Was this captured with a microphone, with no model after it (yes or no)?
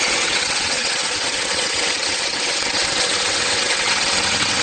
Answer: no